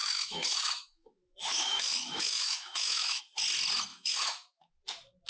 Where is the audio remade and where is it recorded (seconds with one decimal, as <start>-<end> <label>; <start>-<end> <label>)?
0.0-3.2 remade; 3.2-3.9 recorded; 3.9-4.7 remade; 4.7-5.3 recorded